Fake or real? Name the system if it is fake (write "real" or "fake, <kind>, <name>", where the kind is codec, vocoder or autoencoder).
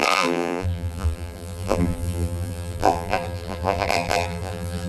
fake, vocoder, BigVGAN v2